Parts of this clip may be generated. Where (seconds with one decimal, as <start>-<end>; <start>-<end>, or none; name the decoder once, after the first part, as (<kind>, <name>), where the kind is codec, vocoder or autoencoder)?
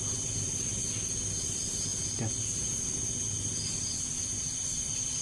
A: 0.0-0.8 (vocoder, BigVGAN v2); 1.3-1.9; 2.6-3.5; 4.6-5.2